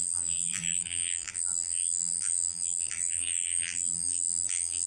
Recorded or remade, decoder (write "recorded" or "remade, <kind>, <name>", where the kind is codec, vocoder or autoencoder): remade, vocoder, BigVGAN v2